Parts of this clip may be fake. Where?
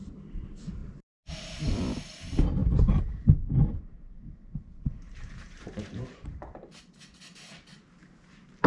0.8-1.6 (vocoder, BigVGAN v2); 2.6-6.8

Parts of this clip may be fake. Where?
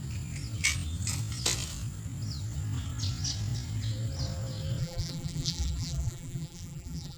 4.8-7.2 (vocoder, BigVGAN v2)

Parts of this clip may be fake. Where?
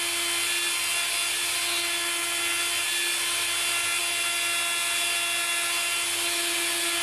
none